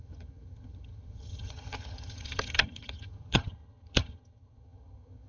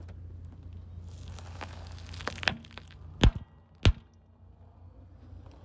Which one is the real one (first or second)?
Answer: second